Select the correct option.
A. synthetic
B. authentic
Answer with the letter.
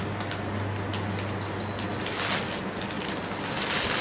B